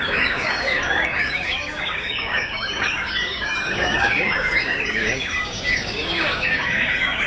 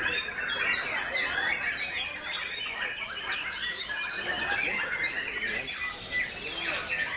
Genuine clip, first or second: second